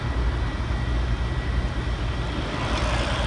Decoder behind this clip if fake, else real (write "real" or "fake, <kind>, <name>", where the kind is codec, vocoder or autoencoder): real